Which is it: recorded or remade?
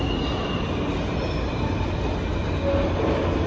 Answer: recorded